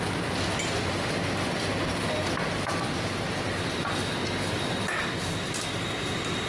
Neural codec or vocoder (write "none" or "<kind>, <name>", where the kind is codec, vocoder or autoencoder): none